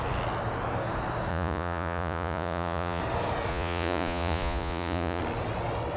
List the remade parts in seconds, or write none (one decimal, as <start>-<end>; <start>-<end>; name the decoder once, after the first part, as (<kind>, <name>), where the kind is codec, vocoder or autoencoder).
1.3-3.0 (vocoder, Vocos); 3.5-5.2